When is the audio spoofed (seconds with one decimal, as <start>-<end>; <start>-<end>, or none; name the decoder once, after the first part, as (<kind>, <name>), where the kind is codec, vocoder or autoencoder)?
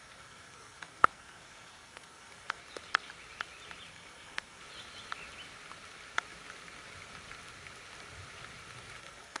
0.0-2.6 (codec, SNAC); 3.9-4.6; 9.0-9.4